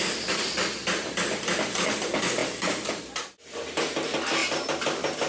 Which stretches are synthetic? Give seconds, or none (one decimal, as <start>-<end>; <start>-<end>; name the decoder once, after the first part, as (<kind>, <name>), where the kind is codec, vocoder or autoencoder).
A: 2.4-3.0 (vocoder, BigVGAN v2)